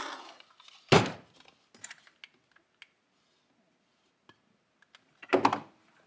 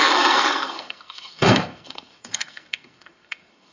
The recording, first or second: first